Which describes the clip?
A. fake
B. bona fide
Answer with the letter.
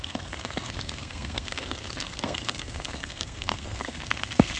A